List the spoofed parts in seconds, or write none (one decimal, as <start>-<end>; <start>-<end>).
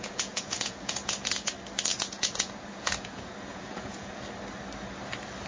0.0-1.5; 1.9-4.2